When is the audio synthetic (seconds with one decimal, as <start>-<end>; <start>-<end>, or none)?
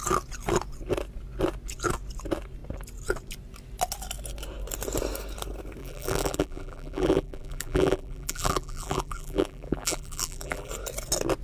5.8-10.7